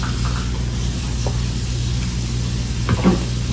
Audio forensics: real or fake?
real